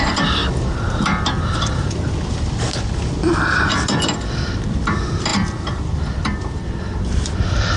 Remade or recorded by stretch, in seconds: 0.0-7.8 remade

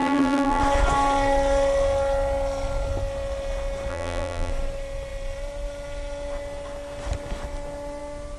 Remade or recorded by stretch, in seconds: 0.0-0.6 remade; 0.6-3.9 recorded; 3.9-4.5 remade; 4.5-8.4 recorded